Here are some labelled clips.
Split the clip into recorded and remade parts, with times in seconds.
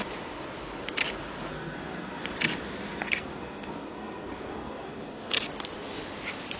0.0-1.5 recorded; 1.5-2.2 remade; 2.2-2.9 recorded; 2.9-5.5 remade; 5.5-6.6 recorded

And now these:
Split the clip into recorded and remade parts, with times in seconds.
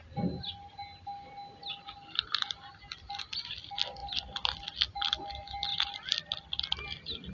0.0-7.3 recorded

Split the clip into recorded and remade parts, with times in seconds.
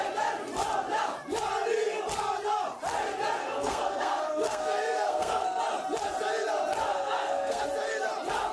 0.0-3.4 recorded; 3.4-5.6 remade; 5.6-6.9 recorded; 6.9-7.6 remade; 7.6-8.5 recorded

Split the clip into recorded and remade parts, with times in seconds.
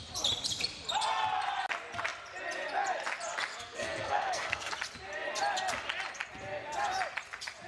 0.0-3.5 recorded; 3.5-4.7 remade; 4.7-7.7 recorded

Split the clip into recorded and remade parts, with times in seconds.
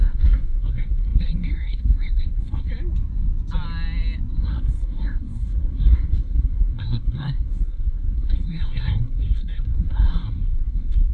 0.0-2.7 remade; 2.7-4.4 recorded; 4.4-11.1 remade